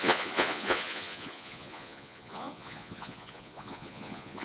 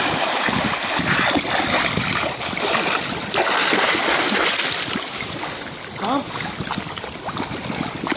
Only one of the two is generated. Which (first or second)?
first